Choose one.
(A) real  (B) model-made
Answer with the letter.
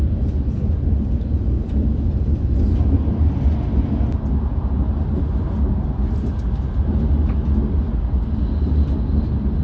A